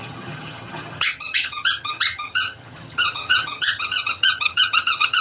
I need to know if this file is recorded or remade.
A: remade